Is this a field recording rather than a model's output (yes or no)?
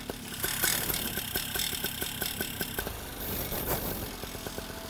yes